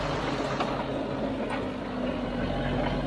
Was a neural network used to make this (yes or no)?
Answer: no